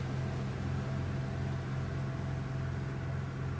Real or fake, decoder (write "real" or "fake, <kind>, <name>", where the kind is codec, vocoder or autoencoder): real